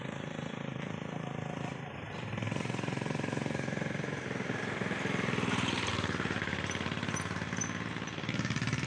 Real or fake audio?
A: fake